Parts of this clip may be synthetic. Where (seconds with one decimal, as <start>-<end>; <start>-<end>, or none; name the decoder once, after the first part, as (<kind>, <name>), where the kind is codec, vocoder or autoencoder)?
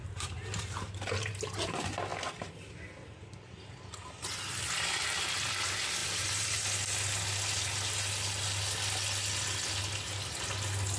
0.0-1.3 (vocoder, BigVGAN v2); 6.0-6.6